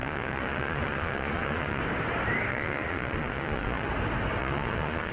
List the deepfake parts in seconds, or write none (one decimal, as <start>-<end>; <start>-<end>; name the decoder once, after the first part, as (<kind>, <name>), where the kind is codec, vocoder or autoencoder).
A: 0.0-1.8 (vocoder, Vocos); 2.5-3.9; 4.4-5.1